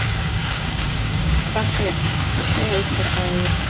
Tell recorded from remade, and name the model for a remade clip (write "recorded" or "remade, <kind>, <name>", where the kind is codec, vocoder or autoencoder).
remade, codec, DAC